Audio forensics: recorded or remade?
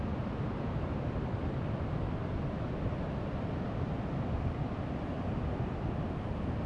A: recorded